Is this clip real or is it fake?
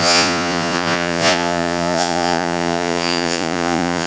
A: fake